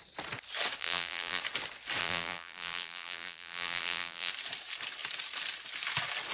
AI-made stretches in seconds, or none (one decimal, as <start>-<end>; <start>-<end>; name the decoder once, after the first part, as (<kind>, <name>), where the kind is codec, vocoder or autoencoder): 0.8-1.4 (vocoder, BigVGAN v2); 2.0-4.3